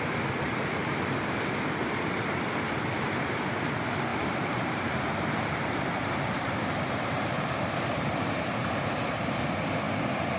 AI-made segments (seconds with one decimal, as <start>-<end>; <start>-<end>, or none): 0.8-1.5; 4.1-8.4